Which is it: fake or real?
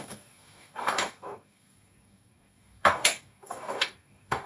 fake